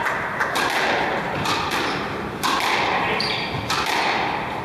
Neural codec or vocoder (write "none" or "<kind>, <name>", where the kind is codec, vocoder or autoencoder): none